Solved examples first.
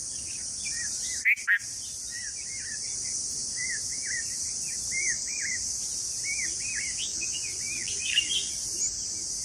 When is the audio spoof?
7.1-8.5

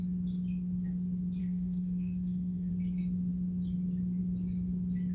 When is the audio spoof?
1.4-2.7

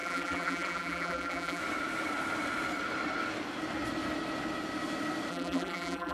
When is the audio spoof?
0.0-1.6; 5.3-6.1

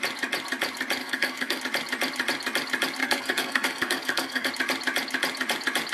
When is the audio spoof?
1.0-1.6; 3.0-4.5

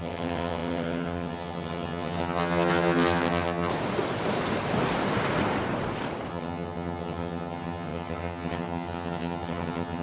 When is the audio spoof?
0.0-3.7; 6.3-10.0

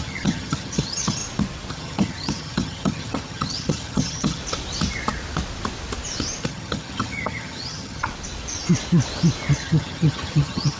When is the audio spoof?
0.0-1.2; 1.7-4.4; 6.4-8.1; 9.5-10.8